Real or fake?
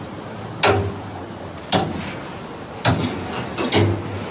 real